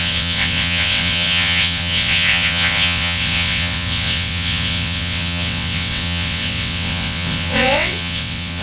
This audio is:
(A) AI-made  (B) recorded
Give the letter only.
A